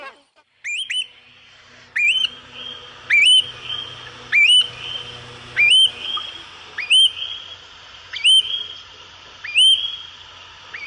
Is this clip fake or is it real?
real